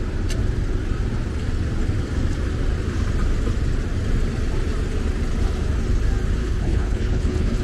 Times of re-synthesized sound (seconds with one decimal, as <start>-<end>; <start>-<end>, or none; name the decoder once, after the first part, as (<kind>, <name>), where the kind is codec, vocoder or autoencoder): 6.4-7.6 (codec, HILCodec)